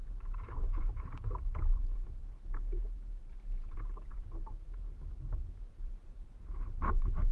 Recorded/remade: remade